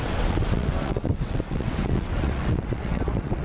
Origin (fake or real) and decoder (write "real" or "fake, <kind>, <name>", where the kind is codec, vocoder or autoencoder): fake, vocoder, WaveNeXt